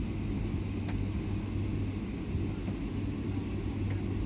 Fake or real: real